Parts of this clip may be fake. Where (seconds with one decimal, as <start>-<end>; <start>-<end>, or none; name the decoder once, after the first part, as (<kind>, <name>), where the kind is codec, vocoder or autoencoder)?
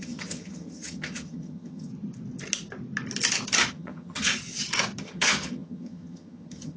0.0-1.9 (vocoder, HiFi-GAN); 3.7-4.3; 5.0-6.8